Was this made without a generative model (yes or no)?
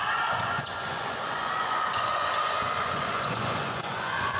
no